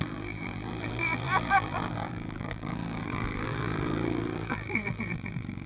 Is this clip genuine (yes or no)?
no